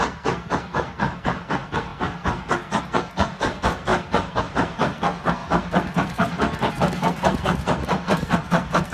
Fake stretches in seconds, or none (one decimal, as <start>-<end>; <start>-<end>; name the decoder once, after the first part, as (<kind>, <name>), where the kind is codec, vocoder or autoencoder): 0.0-8.9 (codec, SNAC)

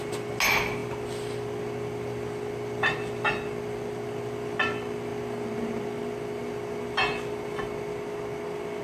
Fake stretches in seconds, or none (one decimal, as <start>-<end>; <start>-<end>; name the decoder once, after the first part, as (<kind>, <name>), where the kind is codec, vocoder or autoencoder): none

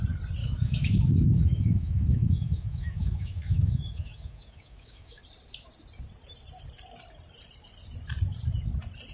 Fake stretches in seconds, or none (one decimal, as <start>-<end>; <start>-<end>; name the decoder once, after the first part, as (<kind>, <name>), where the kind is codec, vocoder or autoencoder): 0.4-5.2 (autoencoder, DAC-VAE)